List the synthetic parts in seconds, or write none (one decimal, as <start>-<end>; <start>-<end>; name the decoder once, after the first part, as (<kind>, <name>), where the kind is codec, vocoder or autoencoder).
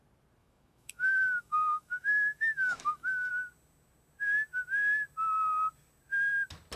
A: 0.4-3.3 (autoencoder, DAC-VAE)